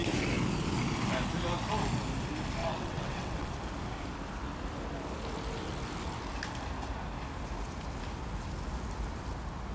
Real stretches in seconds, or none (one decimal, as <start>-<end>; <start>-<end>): 0.0-2.6; 3.5-9.7